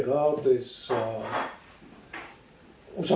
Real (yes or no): yes